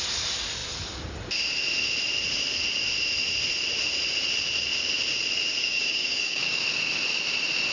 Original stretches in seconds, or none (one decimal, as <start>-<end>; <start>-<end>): 0.0-5.6; 6.6-7.7